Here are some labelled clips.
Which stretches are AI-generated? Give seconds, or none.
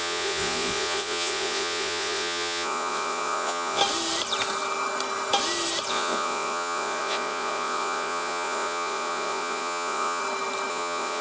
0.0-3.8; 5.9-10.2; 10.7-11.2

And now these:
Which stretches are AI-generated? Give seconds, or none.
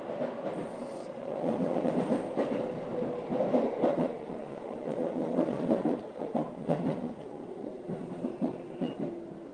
1.0-1.9; 3.9-9.0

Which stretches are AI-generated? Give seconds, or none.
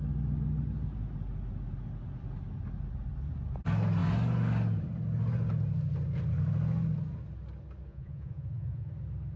7.9-8.9